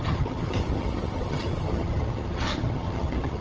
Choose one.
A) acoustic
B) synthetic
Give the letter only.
B